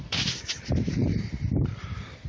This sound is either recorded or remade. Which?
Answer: remade